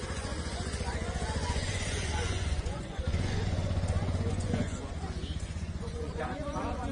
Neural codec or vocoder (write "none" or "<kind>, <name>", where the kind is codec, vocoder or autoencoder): vocoder, Vocos